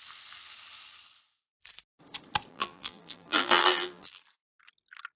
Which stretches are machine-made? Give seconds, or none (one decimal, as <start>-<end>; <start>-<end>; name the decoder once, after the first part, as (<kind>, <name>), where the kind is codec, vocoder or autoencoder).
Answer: 2.5-4.2 (vocoder, BigVGAN v2)

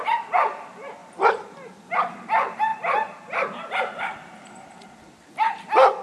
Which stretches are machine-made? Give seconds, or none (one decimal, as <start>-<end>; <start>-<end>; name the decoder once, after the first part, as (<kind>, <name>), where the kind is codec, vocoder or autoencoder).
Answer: 0.0-1.0 (vocoder, BigVGAN v2); 2.0-2.7; 3.7-6.0

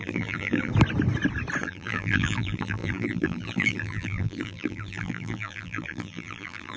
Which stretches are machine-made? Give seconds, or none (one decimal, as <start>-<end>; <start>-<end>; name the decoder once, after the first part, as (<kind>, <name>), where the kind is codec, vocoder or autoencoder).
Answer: 0.0-0.7 (vocoder, BigVGAN v2); 1.6-6.8

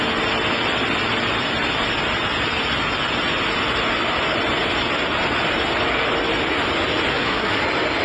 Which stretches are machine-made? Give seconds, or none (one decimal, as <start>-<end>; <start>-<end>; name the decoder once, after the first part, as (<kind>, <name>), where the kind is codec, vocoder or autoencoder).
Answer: 7.1-7.6 (codec, SNAC)

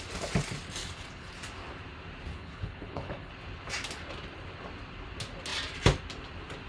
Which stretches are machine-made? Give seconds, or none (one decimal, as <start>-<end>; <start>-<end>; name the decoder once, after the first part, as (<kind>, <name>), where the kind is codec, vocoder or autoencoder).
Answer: 0.8-1.3 (codec, HILCodec); 2.3-3.3

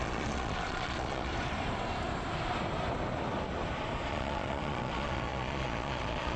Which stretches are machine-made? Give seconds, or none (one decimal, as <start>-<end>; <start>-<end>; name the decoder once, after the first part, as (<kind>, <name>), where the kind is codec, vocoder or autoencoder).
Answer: 0.0-1.3 (vocoder, Vocos); 4.1-6.4

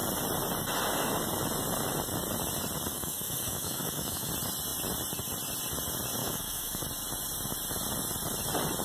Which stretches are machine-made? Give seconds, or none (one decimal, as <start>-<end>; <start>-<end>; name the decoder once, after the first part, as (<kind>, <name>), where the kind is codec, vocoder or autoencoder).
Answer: 2.9-4.3 (autoencoder, DAC-VAE); 6.2-6.8

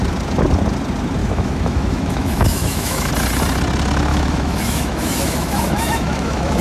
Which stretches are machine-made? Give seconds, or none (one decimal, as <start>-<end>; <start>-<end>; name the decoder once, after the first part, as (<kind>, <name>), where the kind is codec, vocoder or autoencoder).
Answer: 1.2-3.1 (autoencoder, DAC-VAE); 4.1-6.6